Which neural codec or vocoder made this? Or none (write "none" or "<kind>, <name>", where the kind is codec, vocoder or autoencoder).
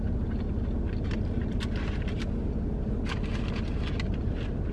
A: none